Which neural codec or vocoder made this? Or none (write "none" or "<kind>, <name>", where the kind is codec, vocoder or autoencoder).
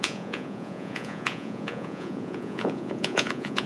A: vocoder, Vocos